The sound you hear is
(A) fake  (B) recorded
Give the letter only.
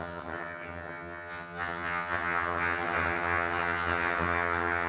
A